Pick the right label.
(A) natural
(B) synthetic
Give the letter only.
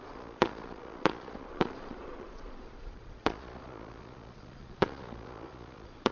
B